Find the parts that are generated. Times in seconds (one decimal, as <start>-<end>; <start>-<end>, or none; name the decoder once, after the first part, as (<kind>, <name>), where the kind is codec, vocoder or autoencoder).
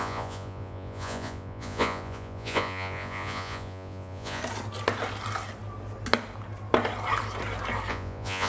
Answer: 0.0-4.4 (vocoder, Vocos); 7.9-8.5